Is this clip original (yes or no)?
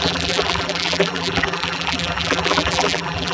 no